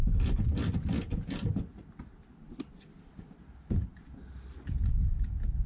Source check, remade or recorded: recorded